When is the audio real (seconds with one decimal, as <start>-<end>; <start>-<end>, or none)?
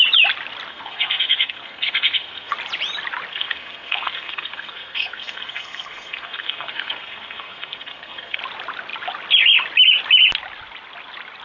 0.0-0.7; 2.5-3.3; 8.4-11.4